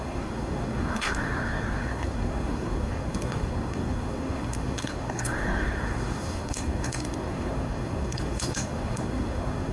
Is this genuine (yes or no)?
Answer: no